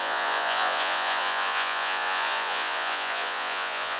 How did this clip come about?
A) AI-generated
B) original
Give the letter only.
A